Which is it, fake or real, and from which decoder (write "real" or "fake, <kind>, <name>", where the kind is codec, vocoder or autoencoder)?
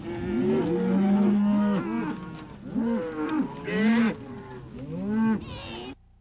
real